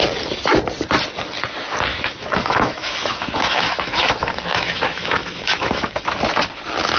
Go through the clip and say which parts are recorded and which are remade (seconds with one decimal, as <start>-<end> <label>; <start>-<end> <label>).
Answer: 0.0-1.9 recorded; 1.9-6.0 remade; 6.0-7.0 recorded